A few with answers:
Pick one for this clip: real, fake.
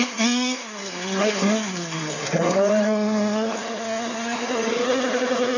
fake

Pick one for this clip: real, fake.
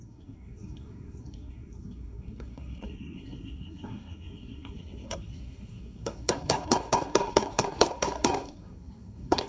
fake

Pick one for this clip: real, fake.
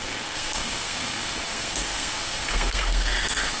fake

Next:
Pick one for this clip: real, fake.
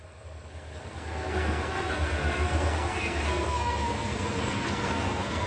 fake